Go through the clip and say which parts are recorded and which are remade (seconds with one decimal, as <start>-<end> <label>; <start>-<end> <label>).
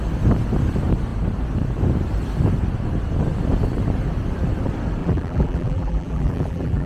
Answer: 0.0-5.0 recorded; 5.0-6.9 remade